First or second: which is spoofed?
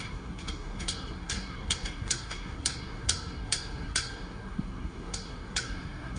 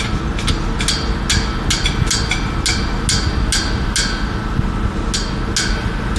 first